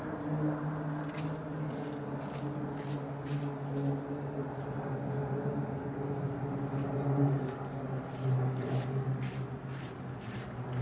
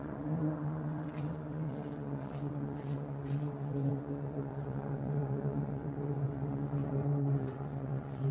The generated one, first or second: second